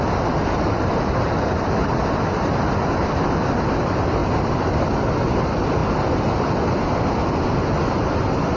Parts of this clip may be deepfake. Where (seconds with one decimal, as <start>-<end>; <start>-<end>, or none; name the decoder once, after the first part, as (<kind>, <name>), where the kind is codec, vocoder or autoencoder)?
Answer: none